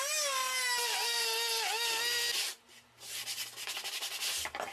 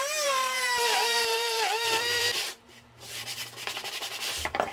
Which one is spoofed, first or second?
second